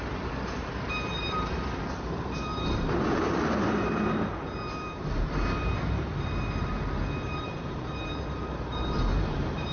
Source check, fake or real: fake